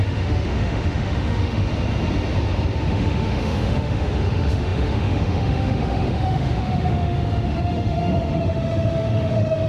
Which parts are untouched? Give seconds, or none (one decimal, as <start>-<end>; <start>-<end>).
1.7-2.9